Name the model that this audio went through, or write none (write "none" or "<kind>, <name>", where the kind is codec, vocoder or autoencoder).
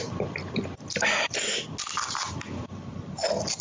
none